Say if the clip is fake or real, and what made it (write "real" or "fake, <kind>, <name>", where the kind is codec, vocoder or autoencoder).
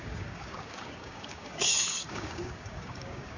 fake, codec, DAC